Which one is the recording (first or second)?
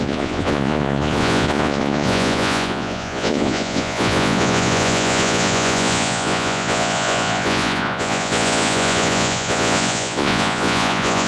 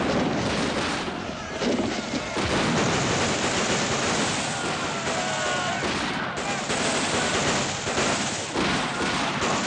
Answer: second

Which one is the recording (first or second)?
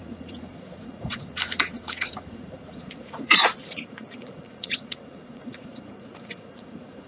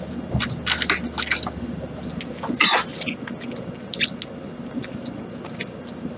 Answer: second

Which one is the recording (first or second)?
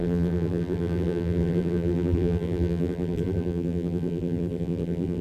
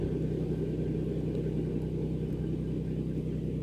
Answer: second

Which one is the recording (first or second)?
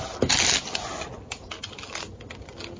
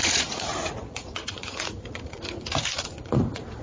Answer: first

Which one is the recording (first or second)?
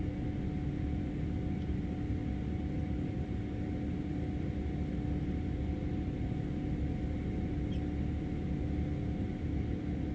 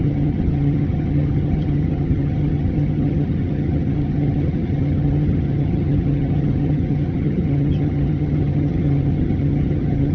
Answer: first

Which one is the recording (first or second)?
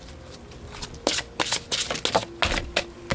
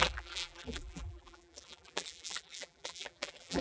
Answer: first